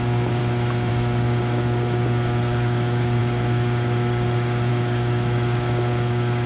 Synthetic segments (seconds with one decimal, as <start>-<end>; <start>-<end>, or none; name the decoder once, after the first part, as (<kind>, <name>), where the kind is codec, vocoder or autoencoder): 0.0-0.4 (codec, DAC); 0.9-6.5